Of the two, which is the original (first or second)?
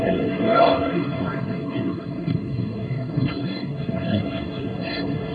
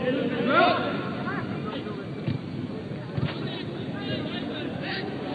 second